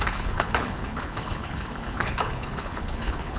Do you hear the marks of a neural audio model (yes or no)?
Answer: yes